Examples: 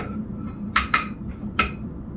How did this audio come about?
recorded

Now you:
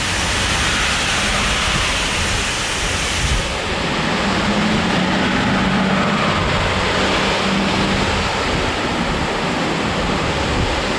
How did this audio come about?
recorded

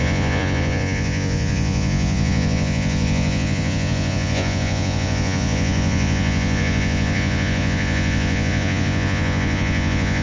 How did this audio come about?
remade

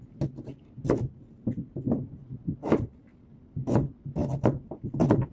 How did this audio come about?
recorded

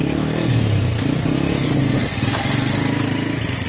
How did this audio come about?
recorded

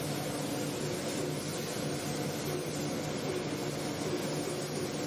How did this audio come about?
recorded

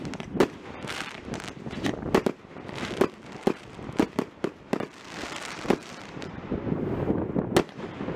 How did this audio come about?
recorded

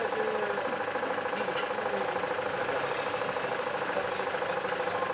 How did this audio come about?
recorded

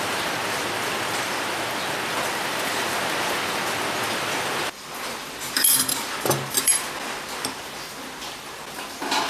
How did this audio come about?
remade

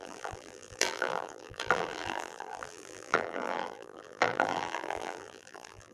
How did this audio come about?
remade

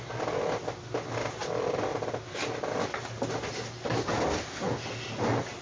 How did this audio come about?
recorded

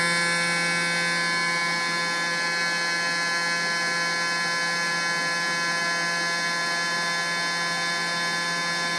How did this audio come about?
recorded